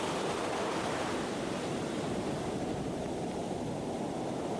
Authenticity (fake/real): real